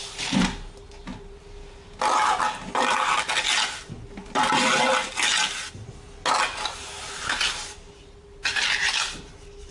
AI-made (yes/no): no